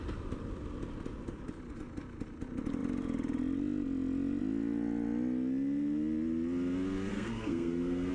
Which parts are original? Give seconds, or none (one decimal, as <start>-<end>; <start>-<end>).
0.0-7.1